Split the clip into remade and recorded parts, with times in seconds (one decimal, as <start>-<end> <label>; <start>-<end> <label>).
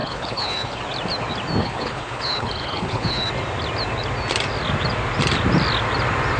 0.0-0.8 remade; 0.8-1.6 recorded; 1.6-3.3 remade; 3.3-6.4 recorded